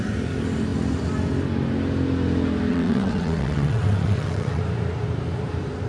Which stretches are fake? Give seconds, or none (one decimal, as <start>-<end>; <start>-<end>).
2.7-4.6